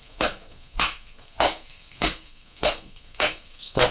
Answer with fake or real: fake